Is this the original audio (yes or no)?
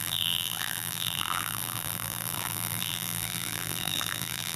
no